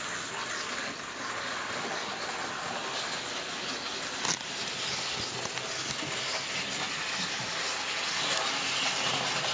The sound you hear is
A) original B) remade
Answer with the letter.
A